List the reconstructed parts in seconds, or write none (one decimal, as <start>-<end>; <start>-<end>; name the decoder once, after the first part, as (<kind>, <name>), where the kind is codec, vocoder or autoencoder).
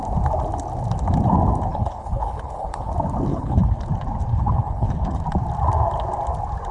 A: 1.7-2.9 (codec, HILCodec); 3.3-3.8; 4.3-5.2